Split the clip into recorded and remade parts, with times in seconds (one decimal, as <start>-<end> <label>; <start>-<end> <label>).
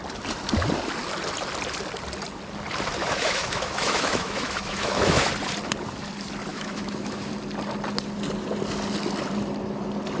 0.0-3.0 recorded; 3.0-5.3 remade; 5.3-6.5 recorded; 6.5-7.3 remade; 7.3-10.2 recorded